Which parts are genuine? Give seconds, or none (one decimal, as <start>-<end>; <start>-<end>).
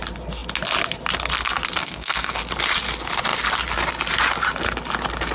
0.0-1.8; 2.4-5.3